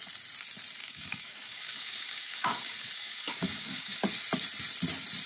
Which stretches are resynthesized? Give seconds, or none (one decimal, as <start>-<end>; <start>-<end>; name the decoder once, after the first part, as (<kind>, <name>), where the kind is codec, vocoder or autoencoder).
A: 0.8-4.0 (codec, DAC)